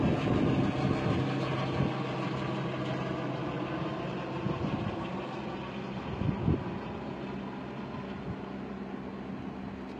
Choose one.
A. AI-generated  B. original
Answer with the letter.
B